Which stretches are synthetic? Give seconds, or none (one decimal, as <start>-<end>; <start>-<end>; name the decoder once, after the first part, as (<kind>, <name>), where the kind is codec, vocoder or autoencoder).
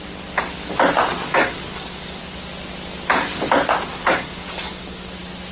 1.1-2.2 (codec, DAC); 4.0-5.1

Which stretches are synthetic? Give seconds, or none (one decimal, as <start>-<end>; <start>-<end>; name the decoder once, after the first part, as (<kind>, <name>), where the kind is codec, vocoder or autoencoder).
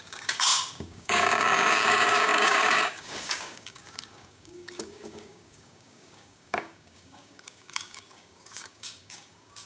0.0-9.7 (codec, DAC)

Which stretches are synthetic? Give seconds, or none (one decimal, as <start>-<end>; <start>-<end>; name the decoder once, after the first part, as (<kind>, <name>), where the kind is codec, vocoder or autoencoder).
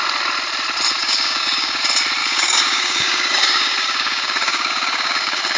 1.0-1.8 (codec, DAC); 2.2-5.6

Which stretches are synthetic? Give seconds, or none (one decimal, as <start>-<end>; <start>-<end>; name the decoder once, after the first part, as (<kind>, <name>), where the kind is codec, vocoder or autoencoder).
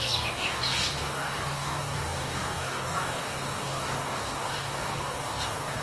0.0-5.8 (codec, DAC)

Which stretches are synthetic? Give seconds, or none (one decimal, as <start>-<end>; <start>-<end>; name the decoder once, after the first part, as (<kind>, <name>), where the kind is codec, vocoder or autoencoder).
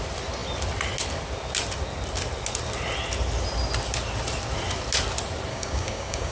5.5-6.3 (codec, DAC)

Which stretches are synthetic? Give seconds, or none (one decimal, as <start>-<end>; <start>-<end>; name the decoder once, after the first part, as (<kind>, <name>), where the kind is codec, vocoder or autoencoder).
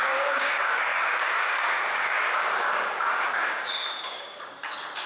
0.0-4.6 (codec, DAC)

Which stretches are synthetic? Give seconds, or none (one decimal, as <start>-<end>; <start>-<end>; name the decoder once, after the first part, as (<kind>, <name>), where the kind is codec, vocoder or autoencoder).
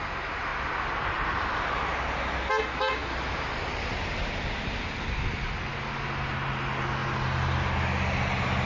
none